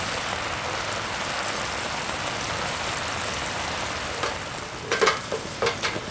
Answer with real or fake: real